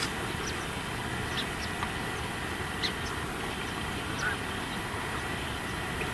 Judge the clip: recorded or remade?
recorded